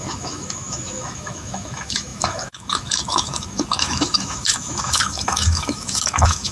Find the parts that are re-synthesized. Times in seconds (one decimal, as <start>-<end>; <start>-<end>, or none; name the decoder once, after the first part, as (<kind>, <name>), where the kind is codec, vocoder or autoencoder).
0.0-6.5 (autoencoder, DAC-VAE)